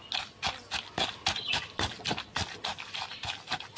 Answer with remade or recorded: recorded